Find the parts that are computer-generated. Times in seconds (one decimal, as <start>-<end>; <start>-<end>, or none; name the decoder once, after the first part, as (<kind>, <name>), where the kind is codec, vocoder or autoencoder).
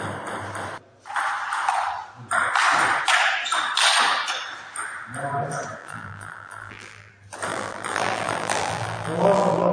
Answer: 5.8-7.1 (vocoder, BigVGAN v2); 7.5-9.7